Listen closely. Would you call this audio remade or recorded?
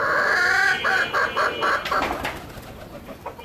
recorded